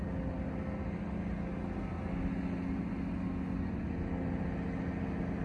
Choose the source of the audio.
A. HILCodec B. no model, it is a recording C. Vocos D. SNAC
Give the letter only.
B